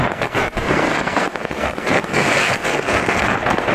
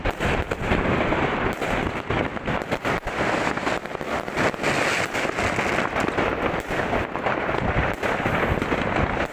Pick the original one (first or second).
second